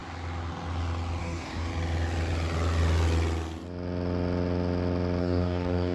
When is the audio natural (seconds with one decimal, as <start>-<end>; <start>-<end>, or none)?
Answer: 0.0-1.2; 1.7-5.2